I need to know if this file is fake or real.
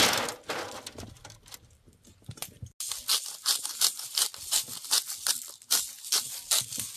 real